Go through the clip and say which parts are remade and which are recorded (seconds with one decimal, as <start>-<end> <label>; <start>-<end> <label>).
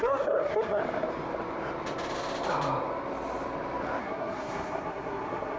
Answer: 0.0-0.8 remade; 0.8-4.0 recorded; 4.0-5.6 remade